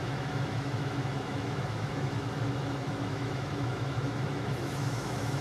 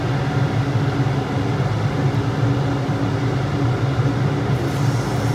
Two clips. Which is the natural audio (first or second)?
second